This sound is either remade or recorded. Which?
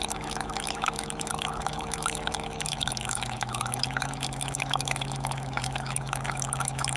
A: remade